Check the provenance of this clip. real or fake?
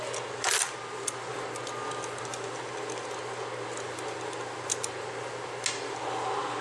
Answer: real